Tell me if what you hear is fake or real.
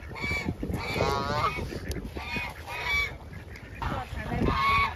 real